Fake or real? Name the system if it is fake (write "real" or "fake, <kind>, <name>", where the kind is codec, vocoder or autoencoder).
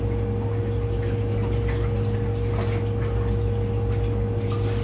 real